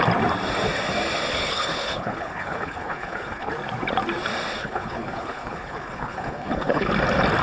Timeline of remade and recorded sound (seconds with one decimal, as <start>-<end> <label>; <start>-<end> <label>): 0.0-1.3 recorded; 1.3-3.5 remade; 3.5-4.6 recorded; 4.6-6.9 remade; 6.9-7.4 recorded